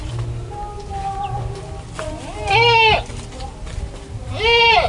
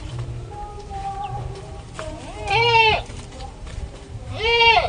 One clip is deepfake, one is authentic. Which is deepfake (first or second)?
second